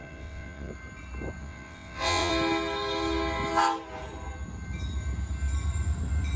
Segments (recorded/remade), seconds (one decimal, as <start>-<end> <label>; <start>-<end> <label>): 0.0-0.7 remade; 0.7-1.4 recorded; 1.4-2.3 remade; 2.3-6.4 recorded